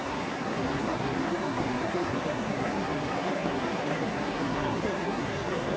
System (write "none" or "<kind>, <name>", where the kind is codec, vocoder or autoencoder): codec, SNAC